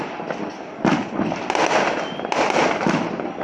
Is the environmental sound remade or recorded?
recorded